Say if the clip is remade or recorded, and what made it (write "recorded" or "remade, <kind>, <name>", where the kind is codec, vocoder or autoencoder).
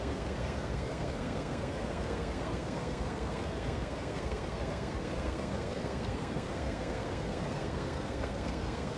remade, codec, SNAC